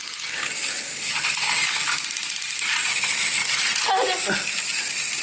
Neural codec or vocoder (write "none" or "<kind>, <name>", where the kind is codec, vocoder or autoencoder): none